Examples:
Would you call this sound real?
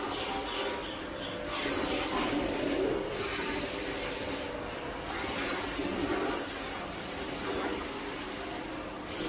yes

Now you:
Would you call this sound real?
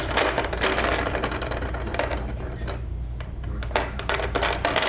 yes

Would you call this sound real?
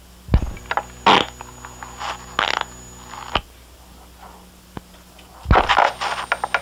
yes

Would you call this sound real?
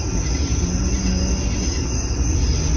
yes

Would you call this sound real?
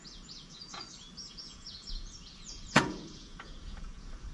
no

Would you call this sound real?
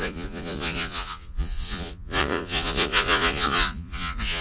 no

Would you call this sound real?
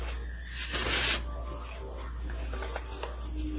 yes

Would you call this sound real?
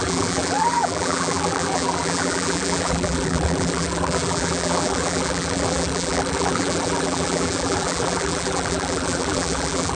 no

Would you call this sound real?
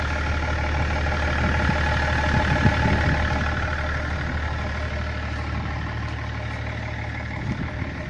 yes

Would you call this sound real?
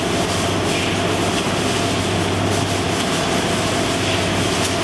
yes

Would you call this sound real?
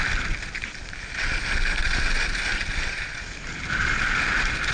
yes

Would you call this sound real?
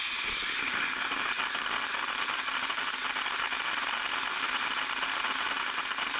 yes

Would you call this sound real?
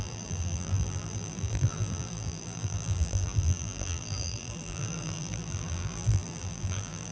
no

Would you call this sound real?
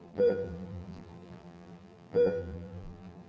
no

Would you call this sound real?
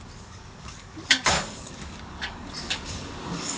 no